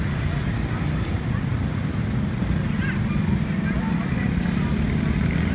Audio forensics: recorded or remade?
recorded